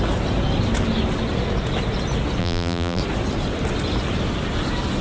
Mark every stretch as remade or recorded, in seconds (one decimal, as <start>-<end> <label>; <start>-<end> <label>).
0.0-2.4 recorded; 2.4-3.0 remade; 3.0-5.0 recorded